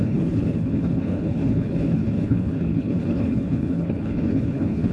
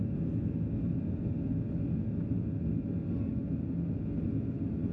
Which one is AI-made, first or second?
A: first